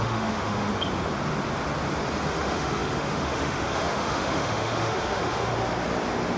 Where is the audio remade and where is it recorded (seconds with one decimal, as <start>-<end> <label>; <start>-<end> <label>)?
0.0-0.7 remade; 0.7-2.3 recorded; 2.3-5.5 remade; 5.5-6.4 recorded

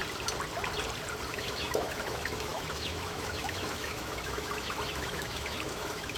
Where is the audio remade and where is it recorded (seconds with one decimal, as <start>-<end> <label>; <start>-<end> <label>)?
0.0-1.3 recorded; 1.3-6.2 remade

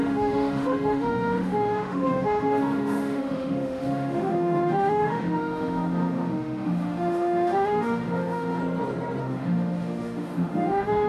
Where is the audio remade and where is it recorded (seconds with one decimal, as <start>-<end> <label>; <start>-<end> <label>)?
0.0-8.6 remade; 8.6-9.2 recorded; 9.2-11.1 remade

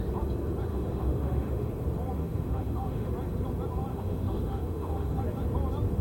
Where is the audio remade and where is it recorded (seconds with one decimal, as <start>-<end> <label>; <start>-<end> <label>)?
0.0-0.7 recorded; 0.7-1.7 remade; 1.7-2.2 recorded; 2.2-3.1 remade; 3.1-3.9 recorded; 3.9-5.2 remade; 5.2-6.0 recorded